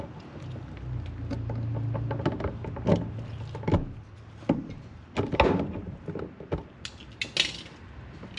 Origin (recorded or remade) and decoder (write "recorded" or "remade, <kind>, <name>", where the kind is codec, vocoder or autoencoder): recorded